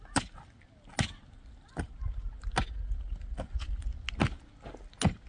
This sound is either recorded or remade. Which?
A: recorded